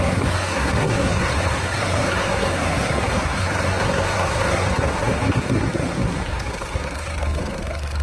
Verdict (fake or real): fake